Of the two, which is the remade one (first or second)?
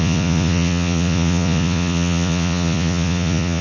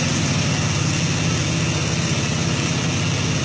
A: first